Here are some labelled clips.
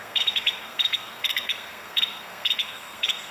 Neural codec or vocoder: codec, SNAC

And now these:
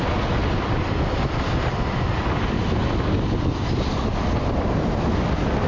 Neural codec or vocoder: none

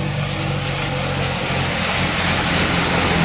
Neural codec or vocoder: none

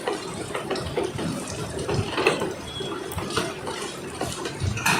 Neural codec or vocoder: vocoder, BigVGAN v2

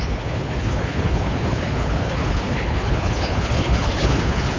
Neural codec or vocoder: codec, HILCodec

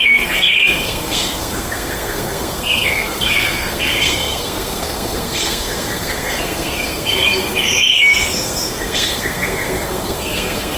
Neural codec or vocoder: codec, SNAC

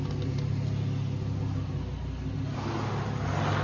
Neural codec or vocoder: none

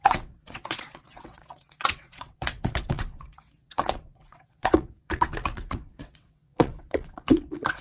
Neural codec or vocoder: vocoder, WaveNeXt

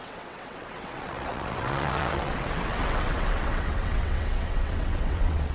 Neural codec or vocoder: vocoder, WaveNeXt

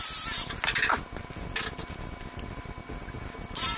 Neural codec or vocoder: none